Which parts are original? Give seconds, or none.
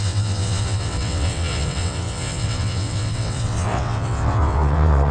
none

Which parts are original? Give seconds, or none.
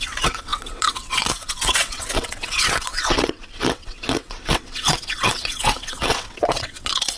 none